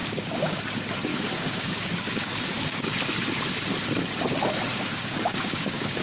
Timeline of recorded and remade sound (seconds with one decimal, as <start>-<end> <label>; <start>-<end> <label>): 0.0-0.6 remade; 0.6-1.1 recorded; 1.1-3.0 remade; 3.0-4.7 recorded; 4.7-6.0 remade